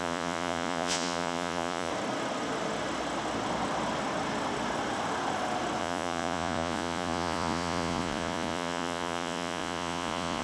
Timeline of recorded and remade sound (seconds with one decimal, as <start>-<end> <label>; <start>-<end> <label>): 0.0-1.9 remade; 1.9-5.8 recorded; 5.8-10.4 remade